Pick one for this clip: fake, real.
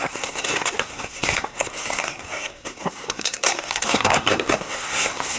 fake